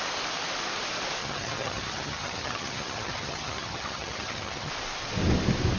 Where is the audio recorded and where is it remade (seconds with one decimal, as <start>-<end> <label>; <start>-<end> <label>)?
0.0-1.2 recorded; 1.2-4.7 remade; 4.7-5.8 recorded